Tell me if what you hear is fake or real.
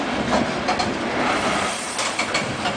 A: fake